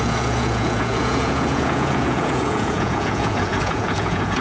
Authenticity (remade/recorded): remade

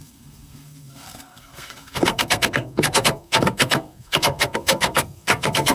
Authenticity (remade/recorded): remade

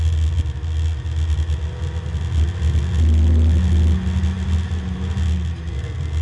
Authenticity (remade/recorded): recorded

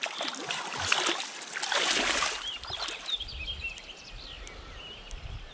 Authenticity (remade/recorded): recorded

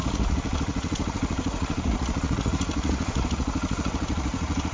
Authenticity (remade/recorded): remade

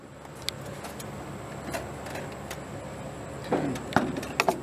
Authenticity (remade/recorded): recorded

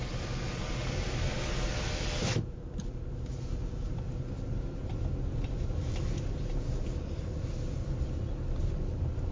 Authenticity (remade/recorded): recorded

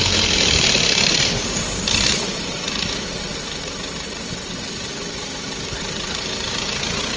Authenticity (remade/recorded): remade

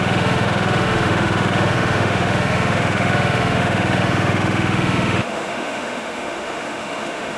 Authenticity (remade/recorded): remade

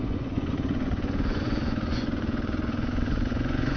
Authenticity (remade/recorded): remade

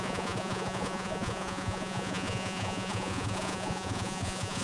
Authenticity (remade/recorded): remade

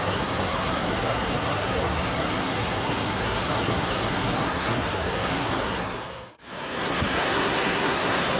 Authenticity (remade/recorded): remade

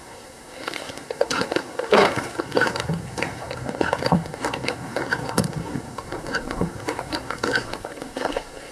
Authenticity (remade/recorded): remade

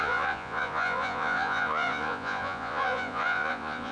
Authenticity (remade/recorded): remade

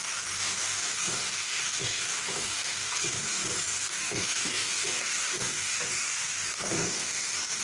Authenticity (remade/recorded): remade